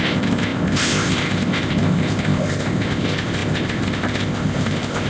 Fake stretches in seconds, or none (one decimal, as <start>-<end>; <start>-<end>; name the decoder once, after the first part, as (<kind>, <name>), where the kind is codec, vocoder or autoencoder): 0.0-5.1 (codec, ZipCodec)